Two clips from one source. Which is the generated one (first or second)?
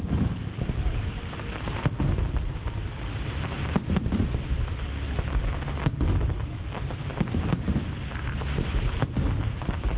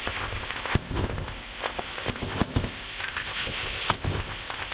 second